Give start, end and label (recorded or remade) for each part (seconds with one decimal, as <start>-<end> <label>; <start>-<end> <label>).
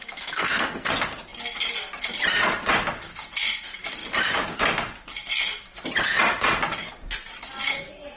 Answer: 0.0-0.9 remade; 0.9-8.2 recorded